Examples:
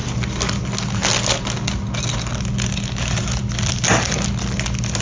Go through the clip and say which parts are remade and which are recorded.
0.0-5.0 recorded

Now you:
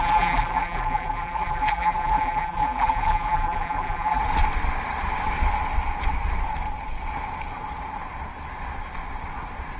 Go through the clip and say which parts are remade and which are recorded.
0.0-4.2 remade; 4.2-9.8 recorded

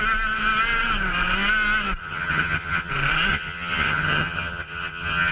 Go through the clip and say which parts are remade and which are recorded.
0.0-2.0 recorded; 2.0-2.9 remade; 2.9-3.3 recorded; 3.3-5.3 remade